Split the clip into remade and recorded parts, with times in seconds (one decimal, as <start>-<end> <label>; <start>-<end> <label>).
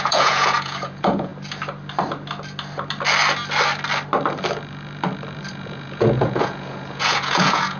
0.0-1.3 remade; 1.3-5.5 recorded; 5.5-7.8 remade